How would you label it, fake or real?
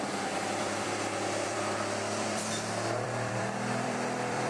fake